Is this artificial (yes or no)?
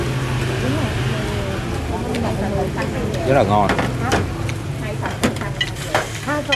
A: no